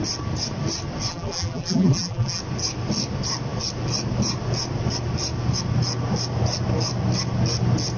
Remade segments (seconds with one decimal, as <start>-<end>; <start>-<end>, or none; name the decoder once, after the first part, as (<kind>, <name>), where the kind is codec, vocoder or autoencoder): 1.1-2.4 (vocoder, BigVGAN v2)

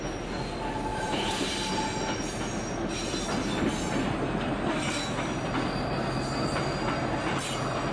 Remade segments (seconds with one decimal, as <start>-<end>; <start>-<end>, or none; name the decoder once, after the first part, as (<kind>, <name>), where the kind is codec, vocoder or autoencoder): 0.9-1.5 (vocoder, BigVGAN v2)